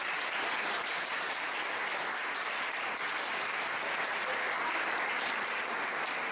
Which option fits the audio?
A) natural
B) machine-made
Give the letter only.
A